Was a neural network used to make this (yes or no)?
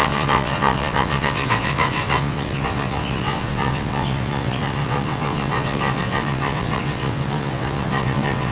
yes